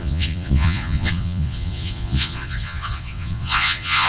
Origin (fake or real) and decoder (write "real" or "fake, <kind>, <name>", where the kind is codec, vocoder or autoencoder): fake, vocoder, Vocos